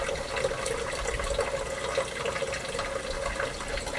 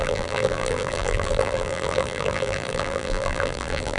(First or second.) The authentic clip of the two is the first